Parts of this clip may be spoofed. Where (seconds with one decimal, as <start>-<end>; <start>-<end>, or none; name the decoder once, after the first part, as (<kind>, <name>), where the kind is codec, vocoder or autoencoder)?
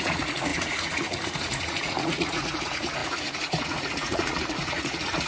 0.0-5.3 (vocoder, Vocos)